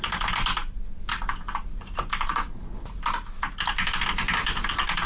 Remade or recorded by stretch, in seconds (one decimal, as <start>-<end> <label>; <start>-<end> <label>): 0.0-5.1 recorded